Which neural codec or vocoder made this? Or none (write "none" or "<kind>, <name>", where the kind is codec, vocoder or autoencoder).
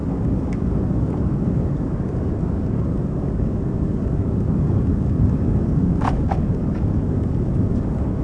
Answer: codec, DAC